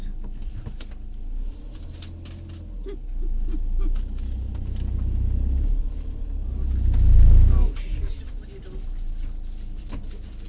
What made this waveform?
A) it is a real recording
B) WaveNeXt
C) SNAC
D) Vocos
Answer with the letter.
A